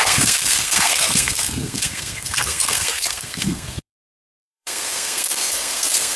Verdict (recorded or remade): remade